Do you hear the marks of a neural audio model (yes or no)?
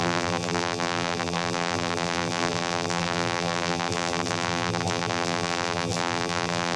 yes